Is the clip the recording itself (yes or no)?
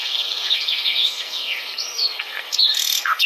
no